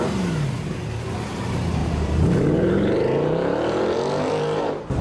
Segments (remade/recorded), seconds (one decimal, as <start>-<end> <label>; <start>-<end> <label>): 0.0-1.8 recorded; 1.8-5.0 remade